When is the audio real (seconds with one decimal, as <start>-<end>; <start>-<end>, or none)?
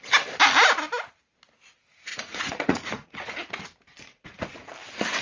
0.0-2.1; 3.3-3.9; 4.7-5.2